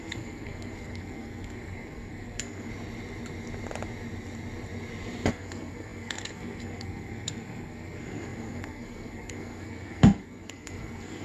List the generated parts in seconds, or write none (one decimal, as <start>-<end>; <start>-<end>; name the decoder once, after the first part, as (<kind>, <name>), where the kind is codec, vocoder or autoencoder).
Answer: 0.0-2.7 (codec, SNAC); 5.3-11.2